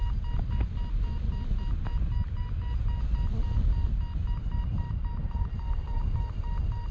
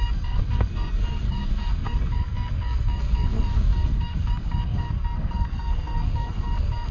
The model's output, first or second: second